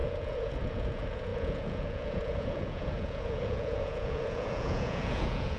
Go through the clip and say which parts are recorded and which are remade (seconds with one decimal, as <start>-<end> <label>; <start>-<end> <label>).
0.0-5.6 remade